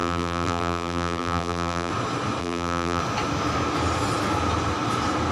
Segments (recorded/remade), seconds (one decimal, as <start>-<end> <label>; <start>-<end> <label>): 0.0-1.9 remade; 1.9-2.4 recorded; 2.4-3.0 remade; 3.0-5.3 recorded